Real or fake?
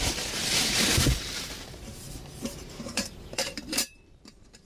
fake